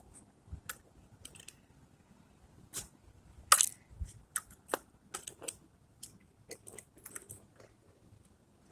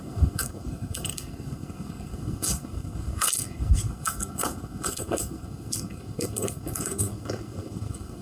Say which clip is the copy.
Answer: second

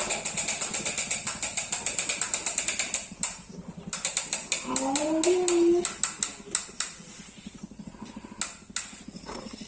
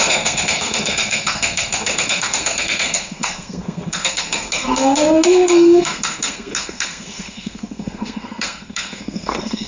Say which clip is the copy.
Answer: second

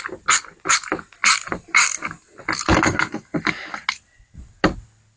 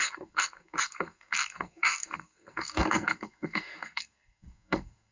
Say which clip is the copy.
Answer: second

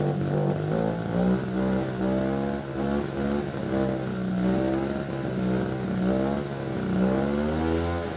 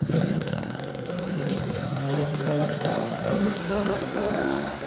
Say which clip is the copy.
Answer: second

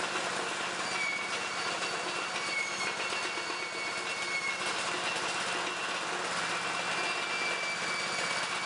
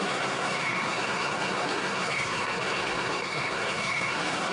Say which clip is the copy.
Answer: second